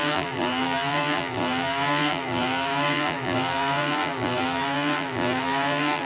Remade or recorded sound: remade